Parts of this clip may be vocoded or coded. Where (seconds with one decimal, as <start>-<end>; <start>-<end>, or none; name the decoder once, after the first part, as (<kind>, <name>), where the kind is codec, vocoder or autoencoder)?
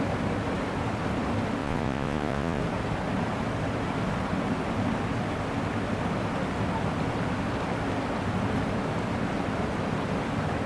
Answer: 1.6-2.6 (vocoder, Vocos)